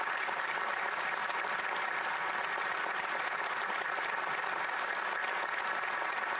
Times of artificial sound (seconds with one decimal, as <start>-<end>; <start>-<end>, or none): none